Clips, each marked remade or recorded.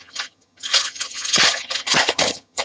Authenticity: remade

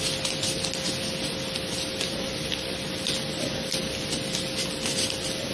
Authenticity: recorded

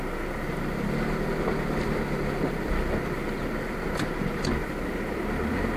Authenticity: recorded